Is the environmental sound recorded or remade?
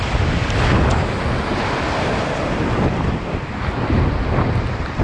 recorded